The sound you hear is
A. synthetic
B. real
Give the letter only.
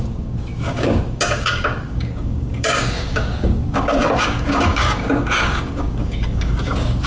A